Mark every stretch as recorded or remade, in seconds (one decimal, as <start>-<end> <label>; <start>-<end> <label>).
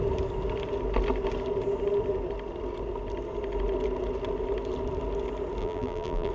0.0-5.6 recorded; 5.6-6.3 remade